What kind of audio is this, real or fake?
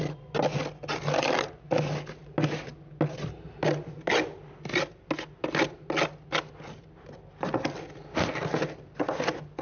real